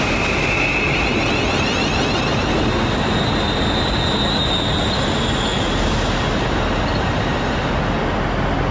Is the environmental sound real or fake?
real